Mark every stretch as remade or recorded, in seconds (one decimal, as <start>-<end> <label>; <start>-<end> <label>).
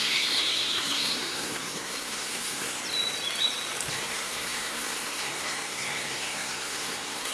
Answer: 0.0-2.8 remade; 2.8-3.9 recorded; 3.9-7.3 remade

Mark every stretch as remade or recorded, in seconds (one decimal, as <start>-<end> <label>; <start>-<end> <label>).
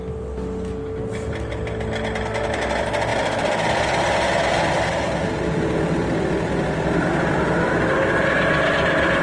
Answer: 0.0-9.2 recorded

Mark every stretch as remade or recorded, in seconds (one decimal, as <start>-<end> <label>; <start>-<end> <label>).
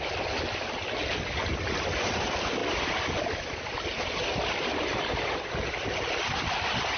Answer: 0.0-7.0 recorded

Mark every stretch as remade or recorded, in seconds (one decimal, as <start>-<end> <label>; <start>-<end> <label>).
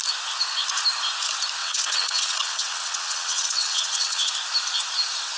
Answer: 0.0-1.6 recorded; 1.6-4.3 remade; 4.3-5.4 recorded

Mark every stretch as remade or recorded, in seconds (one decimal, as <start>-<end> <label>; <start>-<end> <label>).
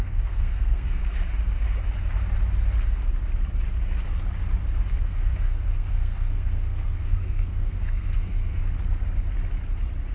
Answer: 0.0-1.0 remade; 1.0-4.9 recorded; 4.9-8.6 remade; 8.6-10.1 recorded